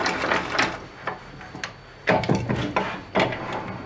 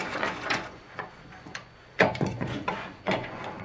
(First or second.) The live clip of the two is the first